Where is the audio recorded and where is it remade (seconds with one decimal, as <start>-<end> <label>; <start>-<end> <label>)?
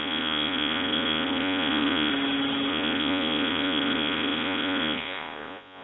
0.0-2.1 remade; 2.1-2.7 recorded; 2.7-5.8 remade